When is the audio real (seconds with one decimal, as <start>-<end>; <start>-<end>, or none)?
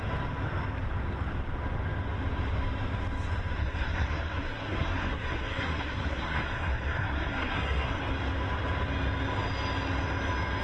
0.0-3.6; 8.0-10.6